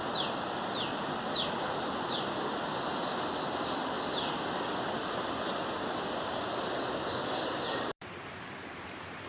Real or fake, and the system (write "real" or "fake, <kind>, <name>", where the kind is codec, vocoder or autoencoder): real